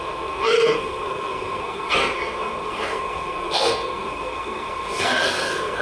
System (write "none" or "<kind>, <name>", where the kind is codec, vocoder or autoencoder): codec, SNAC